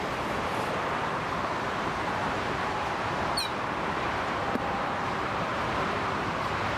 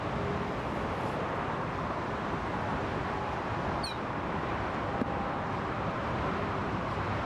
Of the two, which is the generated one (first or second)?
first